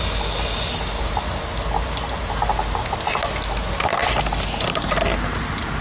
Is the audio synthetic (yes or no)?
no